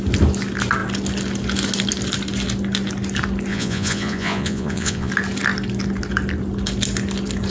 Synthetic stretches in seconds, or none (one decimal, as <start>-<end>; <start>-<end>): 3.5-5.1